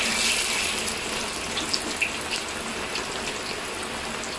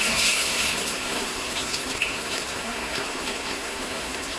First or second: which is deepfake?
second